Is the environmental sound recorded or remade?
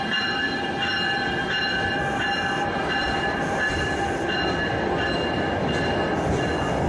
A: recorded